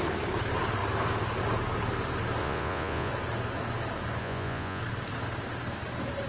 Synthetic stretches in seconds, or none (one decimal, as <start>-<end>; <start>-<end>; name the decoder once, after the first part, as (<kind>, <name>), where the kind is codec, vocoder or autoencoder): 2.4-3.1 (vocoder, Vocos); 4.2-4.8